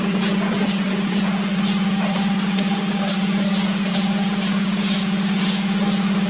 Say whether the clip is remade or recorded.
remade